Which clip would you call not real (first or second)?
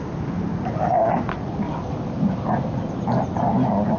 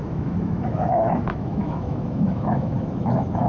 second